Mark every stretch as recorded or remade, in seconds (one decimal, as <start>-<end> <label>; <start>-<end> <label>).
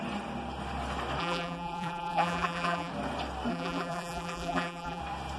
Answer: 0.0-1.2 recorded; 1.2-2.9 remade; 2.9-3.5 recorded; 3.5-5.0 remade; 5.0-5.4 recorded